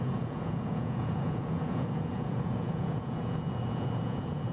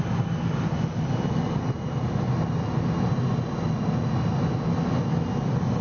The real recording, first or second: second